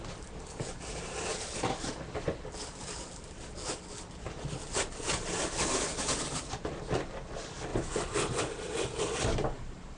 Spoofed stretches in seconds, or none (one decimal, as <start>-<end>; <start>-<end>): 7.7-8.4

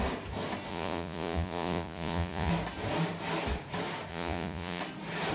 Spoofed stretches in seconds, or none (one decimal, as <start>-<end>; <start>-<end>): 0.7-2.5; 4.1-4.8

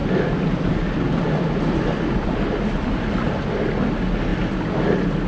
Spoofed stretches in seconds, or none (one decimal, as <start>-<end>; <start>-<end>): none

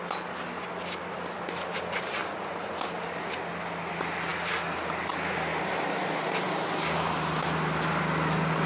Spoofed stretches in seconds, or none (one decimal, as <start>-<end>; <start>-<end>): none

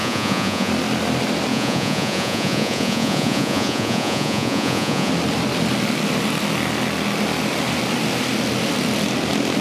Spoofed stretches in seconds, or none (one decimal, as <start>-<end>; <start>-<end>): 0.0-0.7; 1.5-5.1

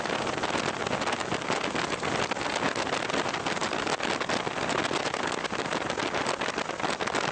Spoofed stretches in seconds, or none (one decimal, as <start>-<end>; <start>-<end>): none

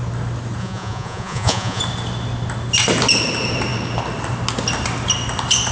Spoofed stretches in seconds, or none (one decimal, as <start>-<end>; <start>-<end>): 0.6-1.8

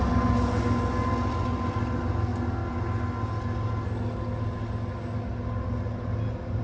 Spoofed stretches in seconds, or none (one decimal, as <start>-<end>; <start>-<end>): none